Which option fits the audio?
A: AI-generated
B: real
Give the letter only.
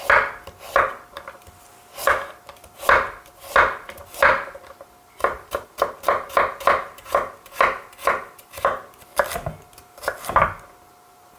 B